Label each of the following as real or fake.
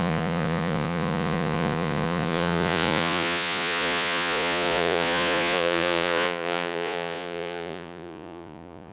fake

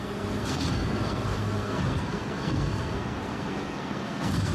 fake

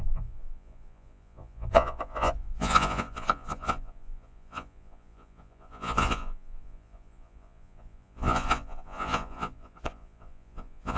fake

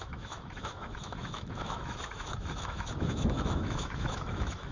fake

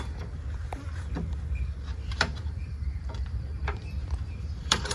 fake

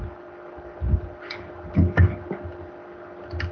real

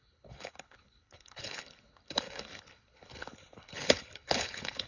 fake